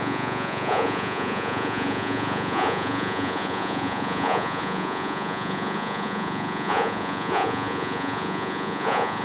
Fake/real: fake